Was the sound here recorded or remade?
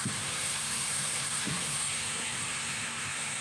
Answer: remade